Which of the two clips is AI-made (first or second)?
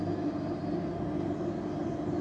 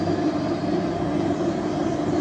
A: second